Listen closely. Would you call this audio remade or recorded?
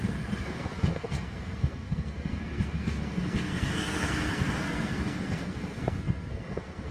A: remade